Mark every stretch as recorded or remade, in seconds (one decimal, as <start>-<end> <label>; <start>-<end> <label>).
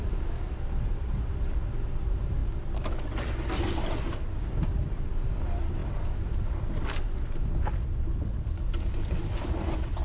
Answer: 0.0-2.4 remade; 2.4-4.7 recorded; 4.7-10.0 remade